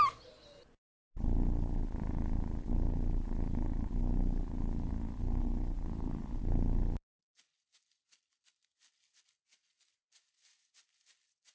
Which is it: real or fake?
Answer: real